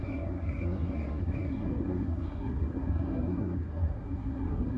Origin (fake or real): fake